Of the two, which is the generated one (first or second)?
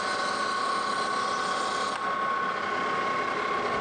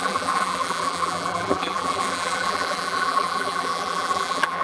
second